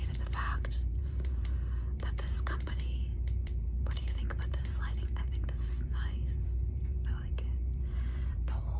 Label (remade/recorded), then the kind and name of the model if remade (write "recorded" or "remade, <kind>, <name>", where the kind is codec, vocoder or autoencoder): remade, vocoder, BigVGAN v2